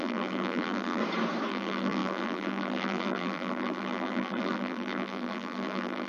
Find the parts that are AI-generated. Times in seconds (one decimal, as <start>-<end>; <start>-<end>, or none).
0.0-1.0; 1.5-6.1